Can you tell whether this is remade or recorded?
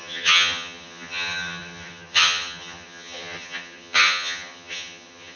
remade